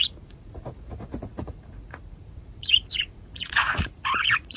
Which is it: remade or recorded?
remade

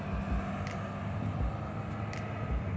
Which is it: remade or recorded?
recorded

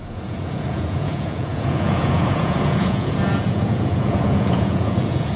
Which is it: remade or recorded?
remade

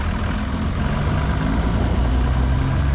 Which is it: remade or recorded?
recorded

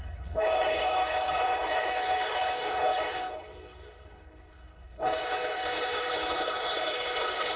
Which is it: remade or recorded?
remade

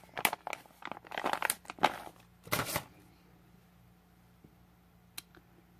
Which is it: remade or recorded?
recorded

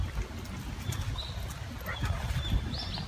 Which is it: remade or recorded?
recorded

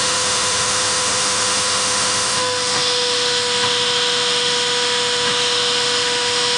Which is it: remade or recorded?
remade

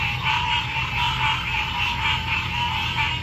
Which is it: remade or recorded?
recorded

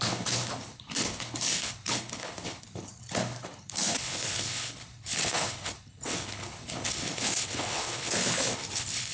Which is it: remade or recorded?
remade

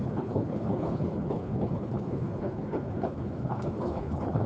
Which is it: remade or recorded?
remade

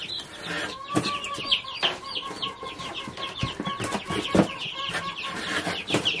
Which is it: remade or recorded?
recorded